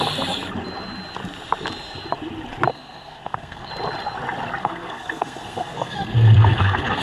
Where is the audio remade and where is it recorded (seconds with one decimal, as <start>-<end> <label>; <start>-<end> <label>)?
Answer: 0.0-2.7 recorded; 2.7-3.7 remade; 3.7-4.6 recorded; 4.6-7.0 remade